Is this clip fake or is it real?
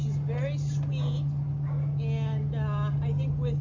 real